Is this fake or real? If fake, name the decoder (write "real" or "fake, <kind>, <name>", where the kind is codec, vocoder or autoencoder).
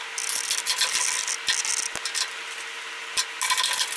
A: real